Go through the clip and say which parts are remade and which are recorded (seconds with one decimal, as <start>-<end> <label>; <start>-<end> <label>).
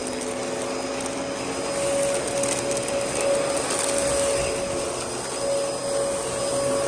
0.0-6.9 recorded